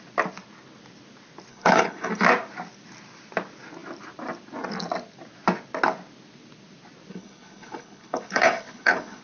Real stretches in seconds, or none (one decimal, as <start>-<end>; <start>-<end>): 0.0-1.5; 2.1-7.1

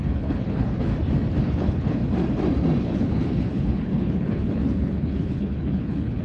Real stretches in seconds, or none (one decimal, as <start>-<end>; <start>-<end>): 0.9-1.4; 2.0-2.8

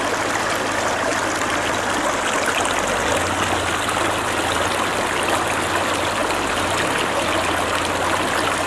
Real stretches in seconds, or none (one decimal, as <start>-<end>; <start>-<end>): 0.0-8.7

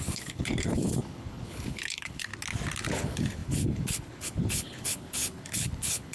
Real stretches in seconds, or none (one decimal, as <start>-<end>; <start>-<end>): 2.3-2.9

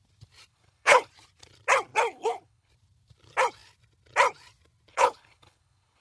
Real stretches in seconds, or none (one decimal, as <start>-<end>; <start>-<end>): 0.0-0.5; 1.1-2.1; 2.7-4.9

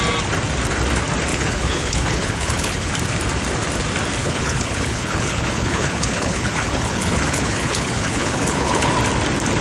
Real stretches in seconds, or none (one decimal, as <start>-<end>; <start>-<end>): 0.0-1.3; 2.9-4.2; 8.9-9.6

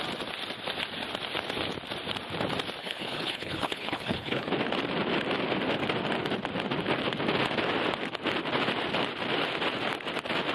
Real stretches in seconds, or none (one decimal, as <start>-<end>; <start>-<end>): 0.0-2.8; 4.5-10.5